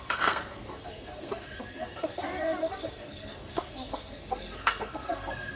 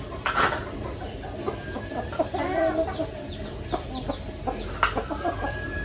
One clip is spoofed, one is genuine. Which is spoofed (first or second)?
first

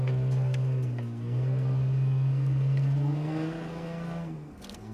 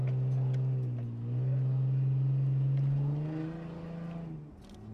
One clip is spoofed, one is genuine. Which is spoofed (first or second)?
first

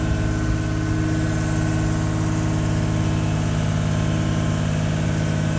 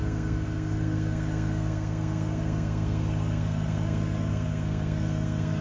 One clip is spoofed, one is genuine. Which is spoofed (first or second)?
second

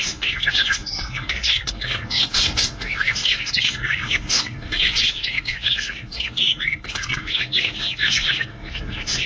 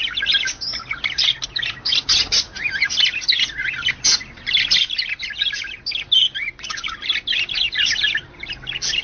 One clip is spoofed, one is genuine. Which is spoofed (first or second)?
first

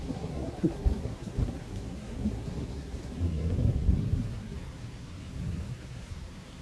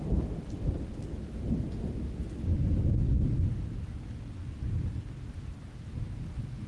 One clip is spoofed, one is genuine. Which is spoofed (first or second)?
first